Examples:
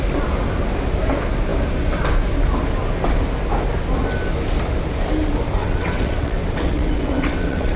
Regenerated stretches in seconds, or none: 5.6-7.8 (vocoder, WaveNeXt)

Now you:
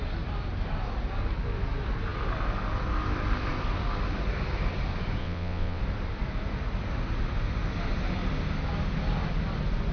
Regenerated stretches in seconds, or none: 5.2-5.8 (vocoder, WaveNeXt)

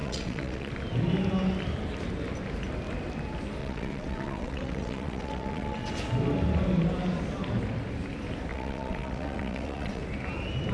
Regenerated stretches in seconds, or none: 0.0-0.7 (vocoder, WaveNeXt); 3.6-5.9; 8.5-10.0

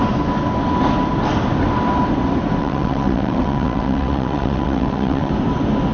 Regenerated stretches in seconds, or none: 2.6-5.3 (vocoder, WaveNeXt)

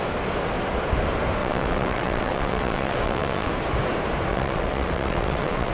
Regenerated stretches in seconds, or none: 1.4-3.5 (vocoder, WaveNeXt); 4.3-5.7

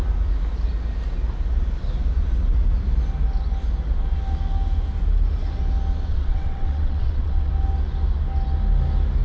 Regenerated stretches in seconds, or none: 6.1-7.5 (vocoder, WaveNeXt)

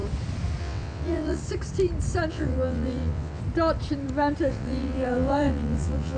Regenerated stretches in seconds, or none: 0.6-1.4 (vocoder, WaveNeXt); 2.3-3.4; 4.5-6.2

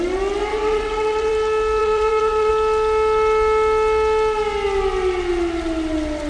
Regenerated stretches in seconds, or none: 0.5-1.3 (vocoder, WaveNeXt); 1.8-2.5